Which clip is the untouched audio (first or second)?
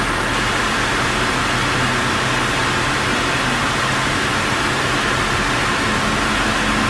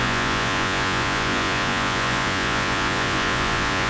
first